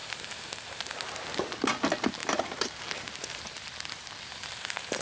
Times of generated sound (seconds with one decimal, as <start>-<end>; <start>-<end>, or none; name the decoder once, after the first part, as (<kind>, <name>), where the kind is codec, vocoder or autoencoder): 2.2-3.4 (vocoder, BigVGAN v2)